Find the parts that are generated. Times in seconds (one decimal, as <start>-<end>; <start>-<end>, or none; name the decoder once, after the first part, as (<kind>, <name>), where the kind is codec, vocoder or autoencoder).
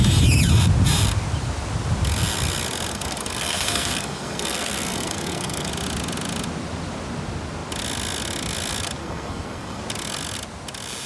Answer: 2.9-5.7 (codec, SNAC); 9.0-9.8